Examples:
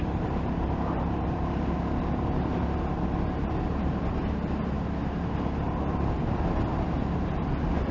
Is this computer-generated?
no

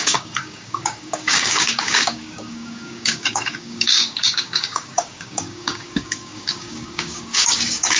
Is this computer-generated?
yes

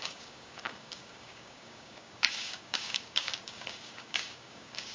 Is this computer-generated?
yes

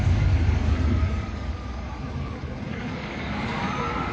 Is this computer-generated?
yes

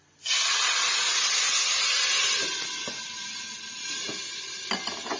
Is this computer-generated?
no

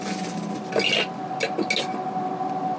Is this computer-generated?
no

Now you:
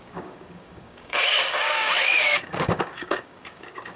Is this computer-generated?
yes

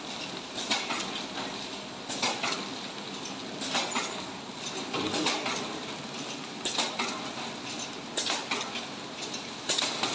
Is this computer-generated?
no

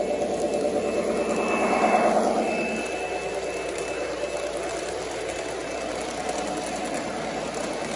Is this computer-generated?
no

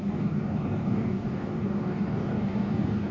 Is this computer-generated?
yes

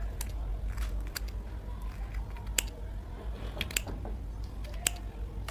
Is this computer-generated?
no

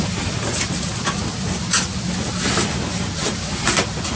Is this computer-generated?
no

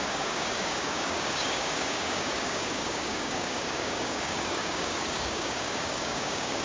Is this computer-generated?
yes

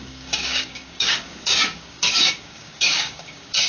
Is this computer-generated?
yes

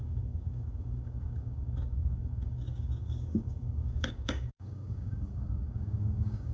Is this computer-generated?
yes